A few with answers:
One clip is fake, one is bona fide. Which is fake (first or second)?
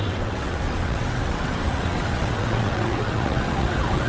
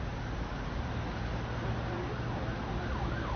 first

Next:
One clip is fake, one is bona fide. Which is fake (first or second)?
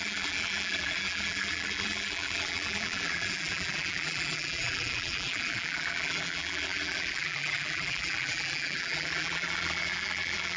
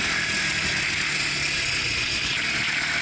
first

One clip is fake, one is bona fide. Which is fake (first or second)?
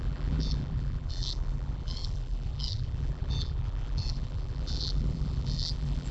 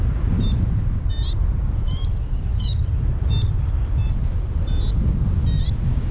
first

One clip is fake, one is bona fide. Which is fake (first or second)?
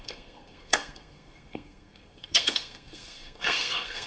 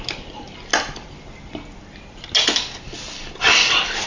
first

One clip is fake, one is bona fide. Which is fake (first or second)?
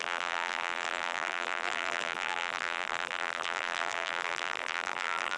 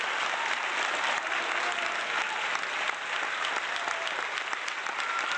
first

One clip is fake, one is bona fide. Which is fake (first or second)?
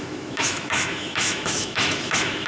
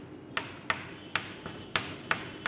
first